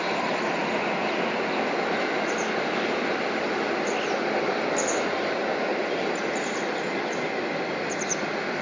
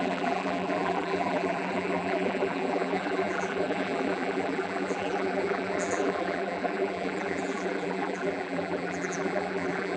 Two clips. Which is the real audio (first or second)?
first